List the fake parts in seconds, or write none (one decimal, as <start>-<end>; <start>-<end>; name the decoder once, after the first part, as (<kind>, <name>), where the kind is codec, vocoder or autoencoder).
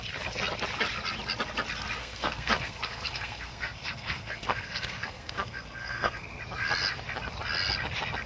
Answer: 2.0-6.4 (codec, SNAC)